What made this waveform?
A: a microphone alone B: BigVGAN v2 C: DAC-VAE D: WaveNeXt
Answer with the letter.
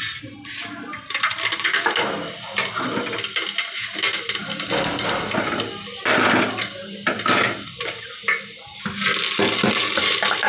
A